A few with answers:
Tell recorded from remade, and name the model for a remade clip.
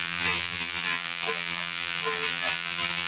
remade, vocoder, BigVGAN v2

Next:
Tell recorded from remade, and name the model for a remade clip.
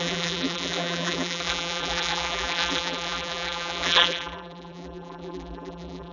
remade, vocoder, BigVGAN v2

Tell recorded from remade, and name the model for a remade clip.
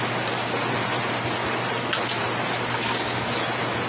recorded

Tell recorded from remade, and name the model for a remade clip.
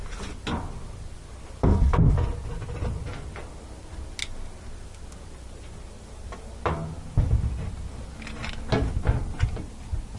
recorded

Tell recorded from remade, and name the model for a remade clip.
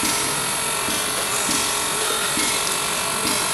recorded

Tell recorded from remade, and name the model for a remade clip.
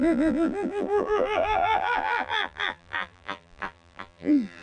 remade, vocoder, BigVGAN v2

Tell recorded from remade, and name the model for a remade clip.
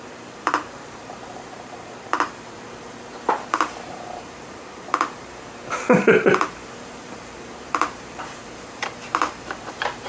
remade, vocoder, BigVGAN v2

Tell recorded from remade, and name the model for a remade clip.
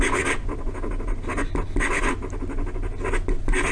recorded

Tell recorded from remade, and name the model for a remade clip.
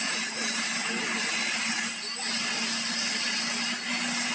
recorded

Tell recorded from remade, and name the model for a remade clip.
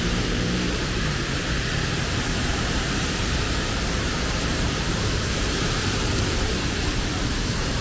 remade, vocoder, BigVGAN v2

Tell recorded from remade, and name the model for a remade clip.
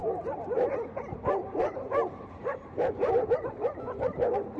remade, vocoder, BigVGAN v2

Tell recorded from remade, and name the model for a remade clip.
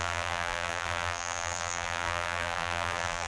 remade, vocoder, BigVGAN v2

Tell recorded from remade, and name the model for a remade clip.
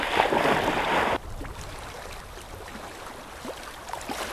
recorded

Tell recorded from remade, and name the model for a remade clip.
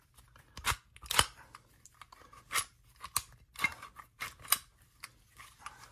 recorded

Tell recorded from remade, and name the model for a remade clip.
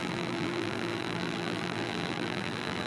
remade, vocoder, BigVGAN v2